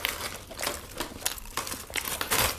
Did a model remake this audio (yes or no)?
no